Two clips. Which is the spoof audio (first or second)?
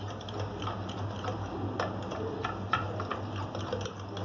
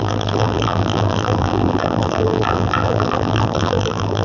second